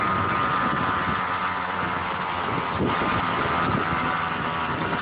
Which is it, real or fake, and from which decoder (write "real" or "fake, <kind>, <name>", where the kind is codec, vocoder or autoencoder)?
real